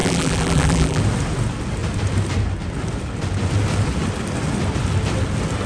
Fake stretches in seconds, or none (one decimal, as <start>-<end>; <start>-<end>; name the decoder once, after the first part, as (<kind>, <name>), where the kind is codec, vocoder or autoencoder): 0.0-1.0 (vocoder, BigVGAN v2)